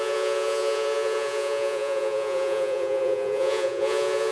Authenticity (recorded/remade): remade